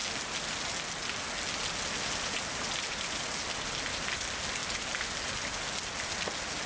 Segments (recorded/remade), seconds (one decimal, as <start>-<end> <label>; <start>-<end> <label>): 0.0-6.7 recorded